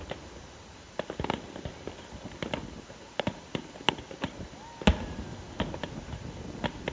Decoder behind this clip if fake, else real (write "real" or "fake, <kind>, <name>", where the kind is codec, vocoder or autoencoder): real